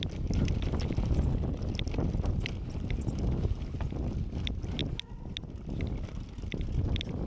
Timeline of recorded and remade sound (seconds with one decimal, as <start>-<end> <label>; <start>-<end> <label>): 0.0-7.3 recorded